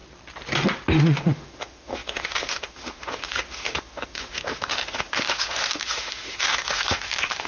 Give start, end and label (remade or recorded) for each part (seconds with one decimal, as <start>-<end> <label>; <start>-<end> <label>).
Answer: 0.0-1.0 recorded; 1.0-7.5 remade